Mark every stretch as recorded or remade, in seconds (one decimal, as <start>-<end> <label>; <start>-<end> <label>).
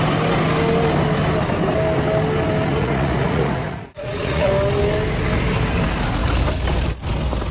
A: 0.0-2.7 recorded; 2.7-4.5 remade; 4.5-7.5 recorded